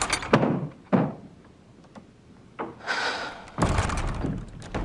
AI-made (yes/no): no